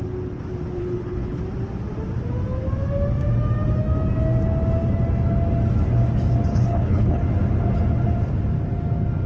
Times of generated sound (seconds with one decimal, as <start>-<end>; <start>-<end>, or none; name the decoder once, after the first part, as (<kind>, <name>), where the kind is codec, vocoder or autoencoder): 0.8-1.4 (codec, HILCodec); 6.5-7.2